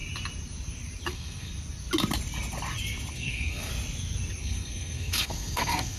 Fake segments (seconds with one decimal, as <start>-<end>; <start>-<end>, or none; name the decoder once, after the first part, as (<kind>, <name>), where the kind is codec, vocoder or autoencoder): 1.1-1.5 (codec, SNAC); 3.1-3.7; 4.4-6.0